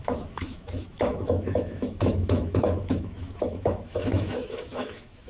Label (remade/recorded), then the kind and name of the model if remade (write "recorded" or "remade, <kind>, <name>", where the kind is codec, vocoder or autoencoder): remade, autoencoder, DAC-VAE